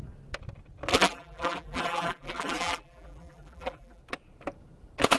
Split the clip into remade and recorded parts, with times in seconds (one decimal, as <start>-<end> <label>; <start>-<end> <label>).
0.0-0.9 recorded; 0.9-4.0 remade; 4.0-5.2 recorded

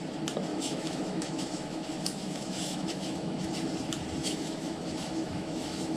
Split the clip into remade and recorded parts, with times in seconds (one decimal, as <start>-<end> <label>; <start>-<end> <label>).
0.0-0.5 recorded; 0.5-3.5 remade; 3.5-4.2 recorded; 4.2-6.0 remade

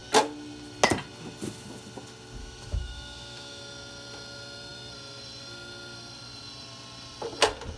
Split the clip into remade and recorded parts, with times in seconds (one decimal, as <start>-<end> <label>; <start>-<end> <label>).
0.0-2.4 recorded; 2.4-3.6 remade; 3.6-7.8 recorded